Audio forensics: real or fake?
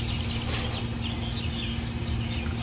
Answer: real